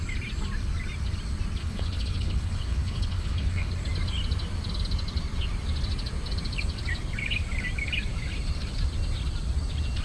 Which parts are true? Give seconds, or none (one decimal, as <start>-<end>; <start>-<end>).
0.0-1.6; 3.7-10.0

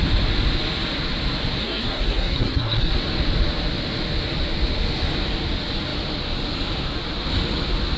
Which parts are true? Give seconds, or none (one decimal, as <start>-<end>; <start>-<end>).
0.0-1.6; 2.9-8.0